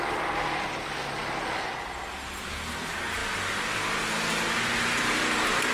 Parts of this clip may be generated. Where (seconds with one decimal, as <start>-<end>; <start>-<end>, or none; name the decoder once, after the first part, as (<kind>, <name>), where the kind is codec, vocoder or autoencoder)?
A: none